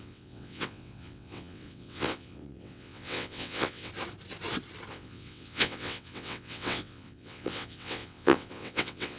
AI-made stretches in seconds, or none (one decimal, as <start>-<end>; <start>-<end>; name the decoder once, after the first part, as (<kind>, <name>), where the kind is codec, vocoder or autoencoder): 0.0-3.9 (vocoder, WaveNeXt); 4.9-9.2